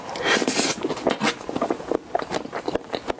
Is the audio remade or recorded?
recorded